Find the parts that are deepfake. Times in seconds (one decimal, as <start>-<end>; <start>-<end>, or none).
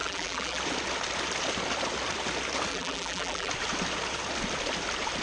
0.0-0.6; 2.7-3.5